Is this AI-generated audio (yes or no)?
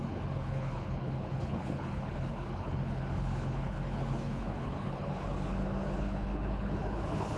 yes